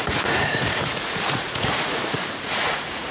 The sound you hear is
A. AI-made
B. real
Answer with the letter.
A